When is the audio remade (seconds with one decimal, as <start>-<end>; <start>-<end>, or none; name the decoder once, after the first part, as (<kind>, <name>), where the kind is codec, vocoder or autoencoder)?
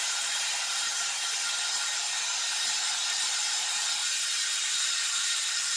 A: 0.0-0.9 (vocoder, BigVGAN v2); 3.3-4.0; 4.6-5.8